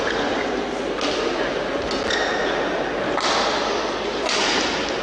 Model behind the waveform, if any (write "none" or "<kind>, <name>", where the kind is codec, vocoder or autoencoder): none